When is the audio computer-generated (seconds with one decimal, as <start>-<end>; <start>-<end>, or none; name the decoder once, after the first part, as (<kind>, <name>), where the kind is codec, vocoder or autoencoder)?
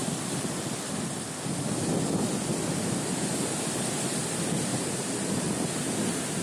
4.7-5.4 (vocoder, BigVGAN v2)